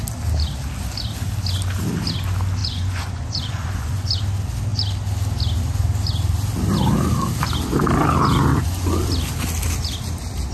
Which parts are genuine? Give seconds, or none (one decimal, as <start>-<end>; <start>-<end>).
0.0-2.6; 4.2-8.5; 9.1-10.5

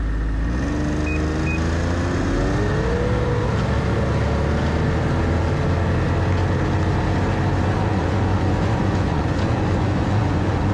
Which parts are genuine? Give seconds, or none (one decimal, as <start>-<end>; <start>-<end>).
0.0-7.9

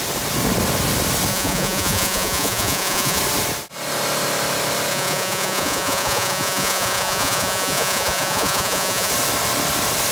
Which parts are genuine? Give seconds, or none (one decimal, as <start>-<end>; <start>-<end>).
0.0-1.3; 3.2-4.9; 9.1-10.1

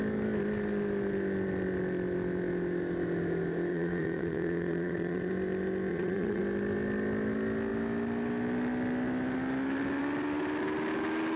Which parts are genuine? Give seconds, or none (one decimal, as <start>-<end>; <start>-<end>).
0.0-3.7; 5.3-5.9; 6.4-11.4

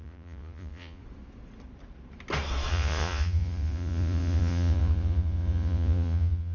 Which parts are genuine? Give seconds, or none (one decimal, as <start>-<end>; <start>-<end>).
1.0-2.7

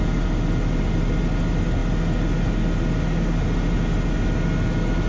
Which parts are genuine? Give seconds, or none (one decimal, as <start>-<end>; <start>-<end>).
0.0-5.1